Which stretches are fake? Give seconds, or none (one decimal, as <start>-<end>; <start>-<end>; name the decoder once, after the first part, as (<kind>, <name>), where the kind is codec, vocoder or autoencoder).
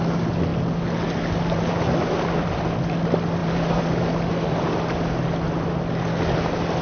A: 3.4-4.3 (vocoder, BigVGAN v2)